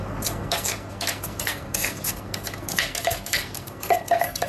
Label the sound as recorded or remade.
remade